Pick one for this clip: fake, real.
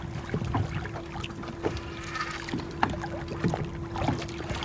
real